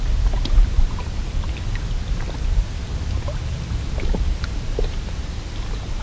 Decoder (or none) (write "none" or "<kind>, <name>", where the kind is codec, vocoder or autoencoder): none